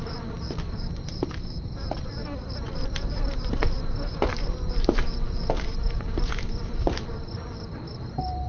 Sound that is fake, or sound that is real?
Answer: fake